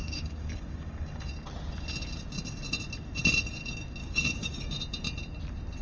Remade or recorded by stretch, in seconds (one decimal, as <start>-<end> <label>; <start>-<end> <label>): 0.0-1.3 remade; 1.3-4.0 recorded; 4.0-4.7 remade; 4.7-5.8 recorded